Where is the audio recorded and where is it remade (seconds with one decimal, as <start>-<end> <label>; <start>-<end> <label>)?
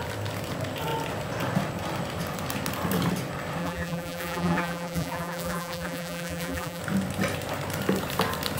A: 0.0-3.6 recorded; 3.6-6.8 remade; 6.8-8.6 recorded